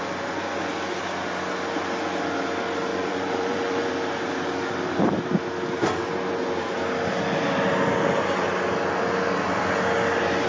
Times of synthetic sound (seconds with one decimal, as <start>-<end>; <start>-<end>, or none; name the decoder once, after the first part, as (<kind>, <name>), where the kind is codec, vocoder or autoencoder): 2.9-3.9 (vocoder, Vocos)